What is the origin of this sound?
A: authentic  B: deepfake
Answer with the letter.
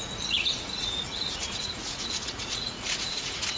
B